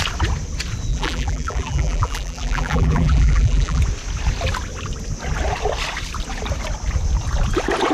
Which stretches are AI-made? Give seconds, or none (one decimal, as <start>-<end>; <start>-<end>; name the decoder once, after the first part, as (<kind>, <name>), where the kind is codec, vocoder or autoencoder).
0.9-3.8 (vocoder, BigVGAN v2)